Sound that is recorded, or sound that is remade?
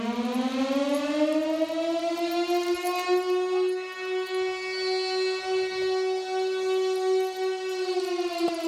recorded